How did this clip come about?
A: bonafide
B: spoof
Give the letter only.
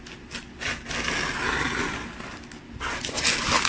A